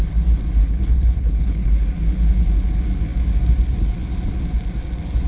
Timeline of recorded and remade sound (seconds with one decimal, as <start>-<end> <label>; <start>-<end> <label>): 0.0-0.6 recorded; 0.6-1.7 remade; 1.7-5.3 recorded